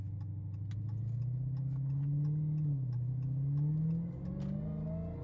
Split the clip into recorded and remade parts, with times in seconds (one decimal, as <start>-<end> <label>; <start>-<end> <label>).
0.0-5.2 recorded